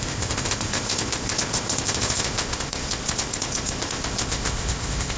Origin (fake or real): fake